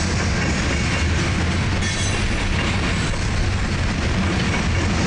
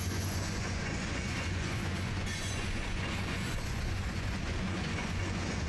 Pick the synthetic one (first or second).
second